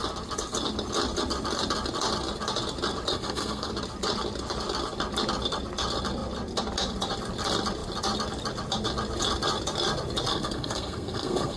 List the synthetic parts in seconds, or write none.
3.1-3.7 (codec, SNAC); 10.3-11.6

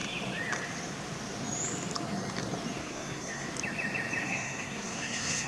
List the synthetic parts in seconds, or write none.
2.8-3.5 (codec, SNAC); 4.2-5.5

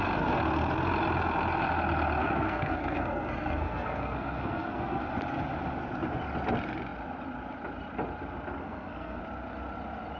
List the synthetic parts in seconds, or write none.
2.2-5.0 (codec, SNAC); 8.6-9.2

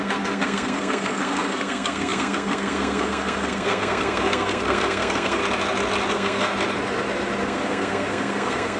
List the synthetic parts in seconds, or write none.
0.0-5.4 (codec, SNAC); 6.1-6.5; 7.4-8.8

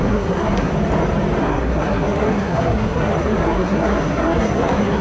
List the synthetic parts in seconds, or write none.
0.0-0.7 (codec, SNAC); 1.4-5.0

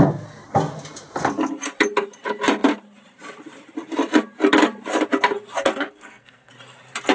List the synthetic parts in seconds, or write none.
5.7-6.5 (codec, SNAC)

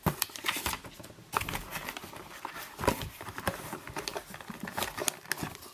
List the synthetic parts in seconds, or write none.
none

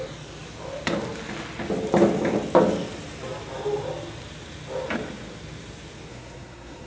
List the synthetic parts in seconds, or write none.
6.1-6.9 (codec, SNAC)